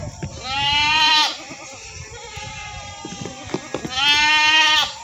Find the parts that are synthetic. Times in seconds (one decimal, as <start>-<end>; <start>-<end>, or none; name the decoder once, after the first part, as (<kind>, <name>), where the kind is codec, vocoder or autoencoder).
0.0-3.0 (vocoder, BigVGAN v2)